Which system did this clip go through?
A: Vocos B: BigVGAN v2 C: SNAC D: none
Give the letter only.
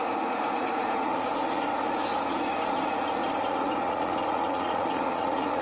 A